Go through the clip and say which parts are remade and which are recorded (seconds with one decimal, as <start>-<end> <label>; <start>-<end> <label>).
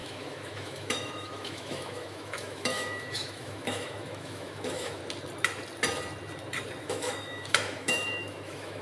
0.0-5.0 remade; 5.0-6.8 recorded; 6.8-8.8 remade